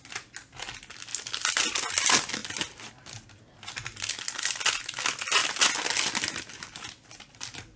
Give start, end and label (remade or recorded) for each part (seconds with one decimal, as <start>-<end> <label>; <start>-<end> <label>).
0.0-7.8 recorded